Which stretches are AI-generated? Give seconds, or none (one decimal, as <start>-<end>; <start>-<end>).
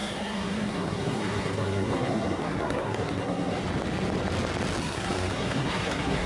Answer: 0.0-3.6; 4.8-6.3